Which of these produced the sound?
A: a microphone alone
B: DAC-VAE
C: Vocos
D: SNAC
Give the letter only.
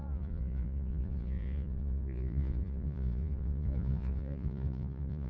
C